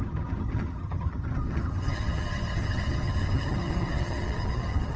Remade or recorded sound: remade